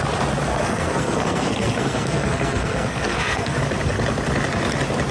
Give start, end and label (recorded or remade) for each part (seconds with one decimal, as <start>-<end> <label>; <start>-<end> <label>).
0.0-0.5 recorded; 0.5-3.6 remade; 3.6-5.1 recorded